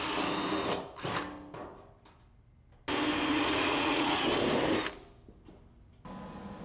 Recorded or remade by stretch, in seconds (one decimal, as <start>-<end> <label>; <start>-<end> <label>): 0.0-3.3 recorded; 3.3-4.2 remade; 4.2-6.6 recorded